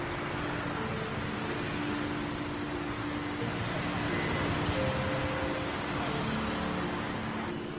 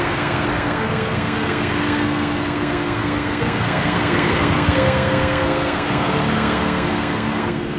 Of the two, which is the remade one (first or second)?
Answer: second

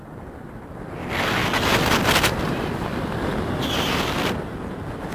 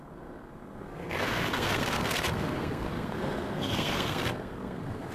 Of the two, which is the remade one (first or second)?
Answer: second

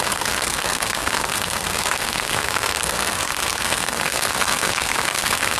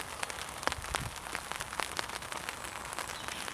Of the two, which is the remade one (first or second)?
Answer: first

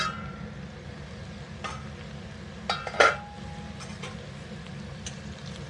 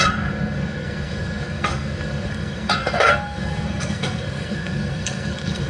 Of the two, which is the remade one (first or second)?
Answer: second